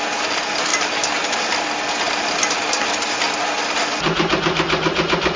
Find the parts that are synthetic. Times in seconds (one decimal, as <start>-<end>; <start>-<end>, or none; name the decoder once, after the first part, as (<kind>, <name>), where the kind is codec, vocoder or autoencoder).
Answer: none